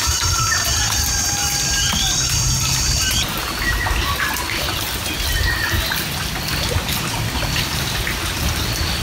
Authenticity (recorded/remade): recorded